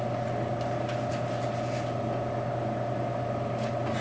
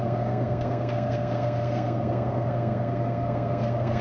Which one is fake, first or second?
second